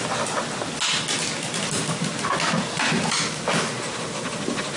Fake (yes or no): no